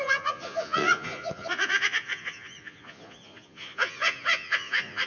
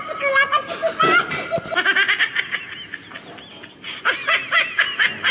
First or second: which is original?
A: second